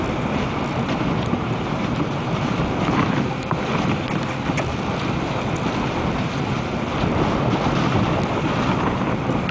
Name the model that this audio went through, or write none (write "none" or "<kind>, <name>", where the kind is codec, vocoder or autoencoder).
none